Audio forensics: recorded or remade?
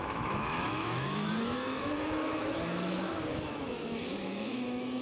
remade